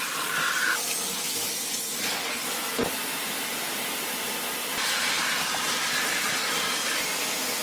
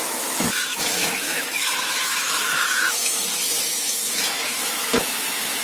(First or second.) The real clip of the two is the first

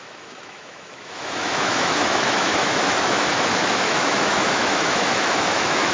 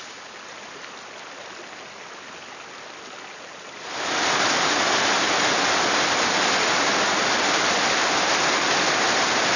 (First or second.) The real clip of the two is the second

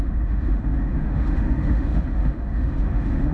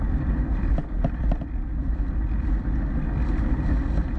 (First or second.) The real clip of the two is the second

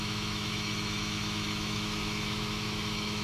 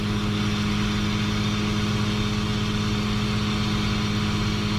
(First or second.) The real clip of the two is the second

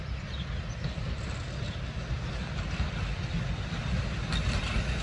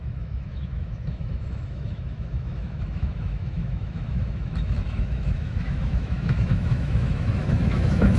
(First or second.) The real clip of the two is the first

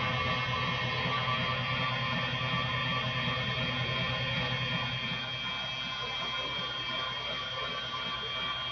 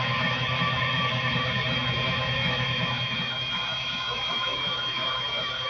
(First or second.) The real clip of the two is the first